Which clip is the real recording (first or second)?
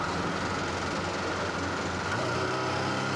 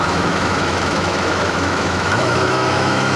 first